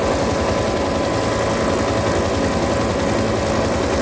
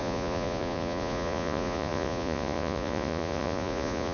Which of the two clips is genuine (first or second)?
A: first